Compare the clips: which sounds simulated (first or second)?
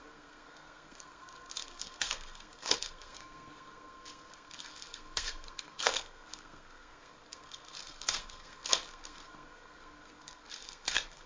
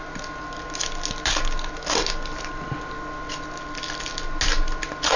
first